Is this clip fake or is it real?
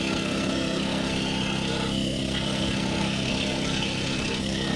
fake